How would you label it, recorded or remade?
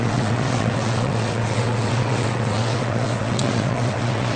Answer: remade